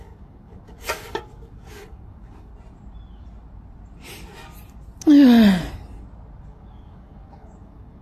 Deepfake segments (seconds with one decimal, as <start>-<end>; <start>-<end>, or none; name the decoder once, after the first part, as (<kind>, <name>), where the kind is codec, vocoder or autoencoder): 0.0-2.5 (codec, DAC); 6.4-8.0